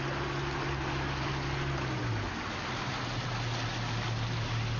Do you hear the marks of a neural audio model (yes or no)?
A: no